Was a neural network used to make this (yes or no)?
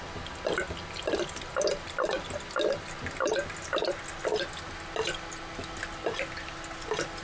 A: no